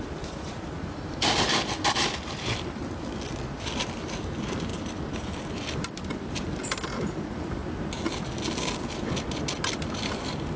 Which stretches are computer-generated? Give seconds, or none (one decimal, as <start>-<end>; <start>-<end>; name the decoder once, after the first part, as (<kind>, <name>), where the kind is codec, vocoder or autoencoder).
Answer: 0.0-4.7 (vocoder, BigVGAN v2); 5.3-7.6; 9.7-10.6